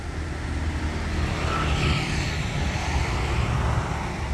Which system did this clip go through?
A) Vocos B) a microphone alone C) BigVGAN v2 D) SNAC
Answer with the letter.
B